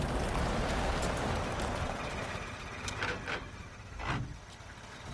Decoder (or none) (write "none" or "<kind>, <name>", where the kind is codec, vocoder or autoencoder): none